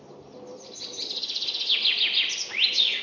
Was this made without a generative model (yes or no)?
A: yes